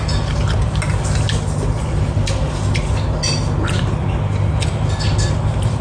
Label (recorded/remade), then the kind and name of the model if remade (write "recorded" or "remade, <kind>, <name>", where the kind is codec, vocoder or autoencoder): recorded